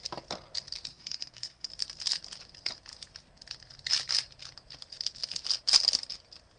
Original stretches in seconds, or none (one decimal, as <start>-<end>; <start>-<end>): 0.0-0.9; 1.7-6.6